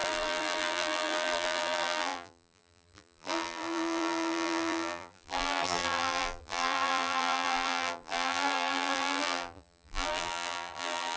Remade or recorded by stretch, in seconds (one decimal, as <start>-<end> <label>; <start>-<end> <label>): 0.0-11.2 remade